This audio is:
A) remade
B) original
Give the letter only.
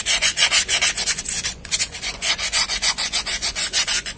A